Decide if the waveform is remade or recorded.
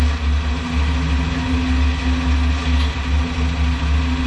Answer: recorded